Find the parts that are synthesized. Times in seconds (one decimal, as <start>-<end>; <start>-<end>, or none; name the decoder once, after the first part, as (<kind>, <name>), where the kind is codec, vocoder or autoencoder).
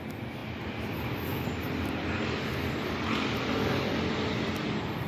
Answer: none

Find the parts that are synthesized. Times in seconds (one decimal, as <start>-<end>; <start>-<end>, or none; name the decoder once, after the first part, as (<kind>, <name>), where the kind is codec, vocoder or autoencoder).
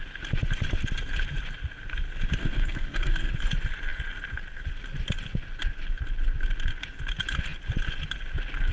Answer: 2.4-3.3 (codec, SNAC)